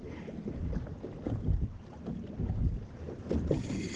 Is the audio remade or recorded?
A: recorded